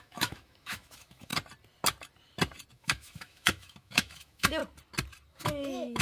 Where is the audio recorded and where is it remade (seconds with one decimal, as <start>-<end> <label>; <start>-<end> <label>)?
0.0-1.3 remade; 1.3-2.7 recorded; 2.7-4.6 remade; 4.6-5.3 recorded; 5.3-6.0 remade